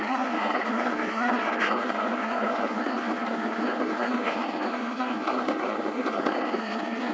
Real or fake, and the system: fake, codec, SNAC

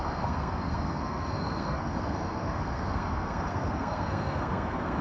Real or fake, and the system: fake, codec, SNAC